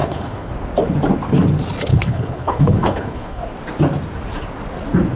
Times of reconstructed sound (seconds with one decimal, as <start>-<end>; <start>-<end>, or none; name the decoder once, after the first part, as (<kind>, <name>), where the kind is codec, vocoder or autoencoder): 0.0-0.5 (codec, HILCodec); 1.9-3.4